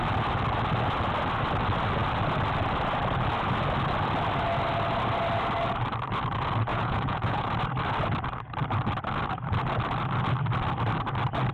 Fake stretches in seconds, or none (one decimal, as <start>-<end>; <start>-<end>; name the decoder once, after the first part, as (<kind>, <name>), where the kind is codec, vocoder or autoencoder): 6.7-7.5 (vocoder, Vocos)